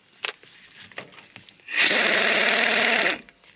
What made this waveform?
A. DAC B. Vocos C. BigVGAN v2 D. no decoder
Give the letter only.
C